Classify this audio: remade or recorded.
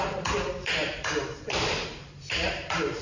remade